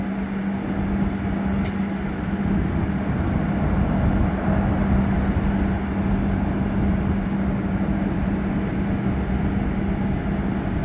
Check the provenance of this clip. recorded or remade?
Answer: recorded